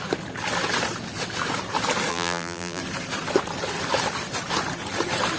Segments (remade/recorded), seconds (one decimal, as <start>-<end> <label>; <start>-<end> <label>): 0.0-2.1 recorded; 2.1-2.8 remade; 2.8-5.4 recorded